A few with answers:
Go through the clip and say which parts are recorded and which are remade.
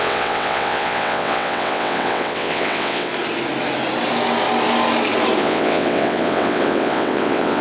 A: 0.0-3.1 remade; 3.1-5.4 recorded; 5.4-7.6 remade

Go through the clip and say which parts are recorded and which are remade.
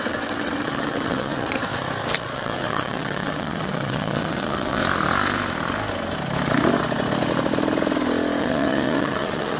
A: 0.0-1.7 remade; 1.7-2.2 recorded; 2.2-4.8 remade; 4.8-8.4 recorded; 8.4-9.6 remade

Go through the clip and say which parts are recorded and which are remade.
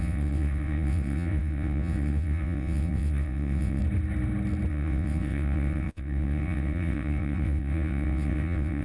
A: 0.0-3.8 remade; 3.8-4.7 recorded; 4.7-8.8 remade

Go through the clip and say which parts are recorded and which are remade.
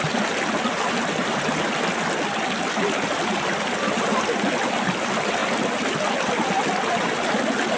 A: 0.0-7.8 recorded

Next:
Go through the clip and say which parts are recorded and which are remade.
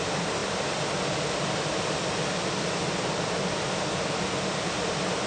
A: 0.0-5.3 recorded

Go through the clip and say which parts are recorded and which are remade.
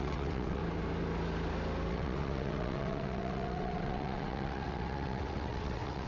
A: 0.0-0.6 remade; 0.6-1.9 recorded; 1.9-6.1 remade